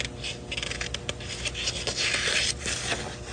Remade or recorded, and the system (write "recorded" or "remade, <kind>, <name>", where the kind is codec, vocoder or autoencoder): recorded